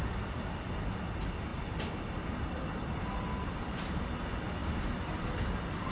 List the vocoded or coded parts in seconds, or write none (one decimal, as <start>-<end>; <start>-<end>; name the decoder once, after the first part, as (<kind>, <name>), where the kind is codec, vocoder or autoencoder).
none